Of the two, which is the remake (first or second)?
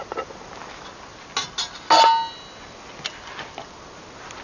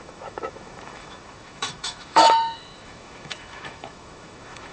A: second